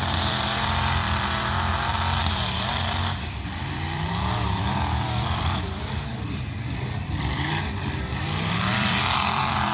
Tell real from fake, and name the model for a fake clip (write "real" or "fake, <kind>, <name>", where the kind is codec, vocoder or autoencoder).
fake, vocoder, BigVGAN v2